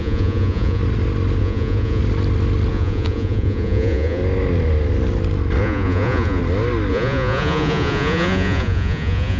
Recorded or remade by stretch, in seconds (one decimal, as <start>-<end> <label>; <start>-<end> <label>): 0.0-0.8 remade; 0.8-1.4 recorded; 1.4-2.0 remade; 2.0-2.7 recorded; 2.7-4.2 remade; 4.2-5.6 recorded; 5.6-6.4 remade; 6.4-6.9 recorded; 6.9-9.4 remade